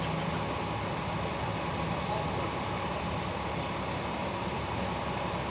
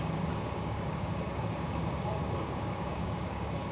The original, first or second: first